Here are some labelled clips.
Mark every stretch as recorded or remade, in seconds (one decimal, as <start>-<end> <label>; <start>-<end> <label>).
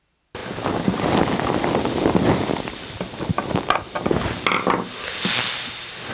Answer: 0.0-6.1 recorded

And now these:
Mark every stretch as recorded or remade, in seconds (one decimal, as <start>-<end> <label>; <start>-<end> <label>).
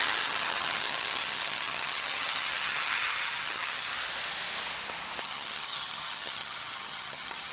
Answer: 0.0-3.9 remade; 3.9-5.2 recorded; 5.2-7.5 remade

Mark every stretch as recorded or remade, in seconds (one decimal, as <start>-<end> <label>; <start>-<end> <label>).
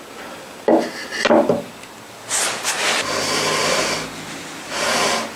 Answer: 0.0-5.4 recorded